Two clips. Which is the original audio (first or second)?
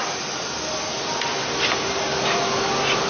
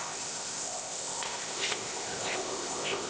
first